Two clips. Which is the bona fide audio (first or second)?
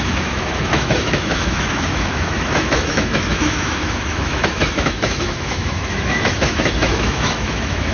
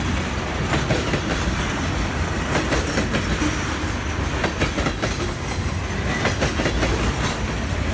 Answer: second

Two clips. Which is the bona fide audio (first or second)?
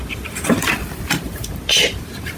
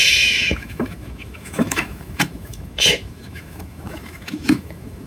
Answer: first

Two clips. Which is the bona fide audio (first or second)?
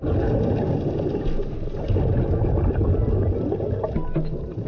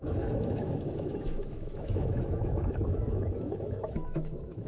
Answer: first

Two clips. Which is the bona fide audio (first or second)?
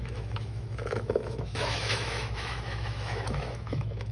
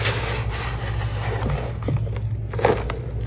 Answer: second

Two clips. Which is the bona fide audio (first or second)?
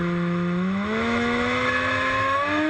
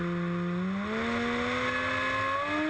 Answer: second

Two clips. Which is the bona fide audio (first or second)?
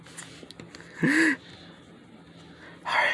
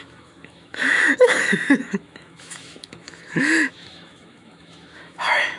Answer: first